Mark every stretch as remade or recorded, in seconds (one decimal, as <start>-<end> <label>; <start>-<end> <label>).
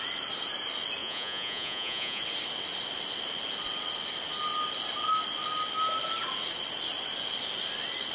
0.0-1.0 recorded; 1.0-2.2 remade; 2.2-8.1 recorded